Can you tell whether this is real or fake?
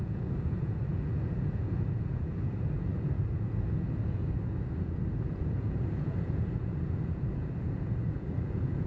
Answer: fake